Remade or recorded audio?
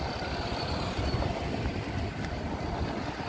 recorded